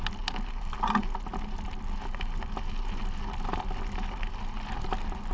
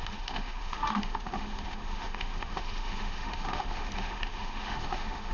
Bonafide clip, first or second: first